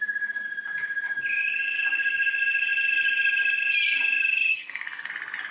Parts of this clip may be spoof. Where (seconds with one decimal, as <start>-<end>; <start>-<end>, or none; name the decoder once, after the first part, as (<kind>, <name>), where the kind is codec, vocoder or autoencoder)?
4.5-5.1 (codec, SNAC)